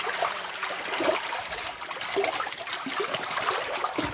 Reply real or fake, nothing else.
real